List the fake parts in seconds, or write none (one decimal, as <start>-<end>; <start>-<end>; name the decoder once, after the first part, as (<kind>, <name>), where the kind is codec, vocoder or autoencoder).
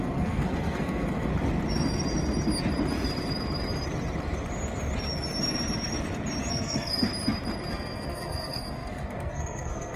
0.0-1.3 (codec, SNAC); 6.5-7.1; 7.7-10.0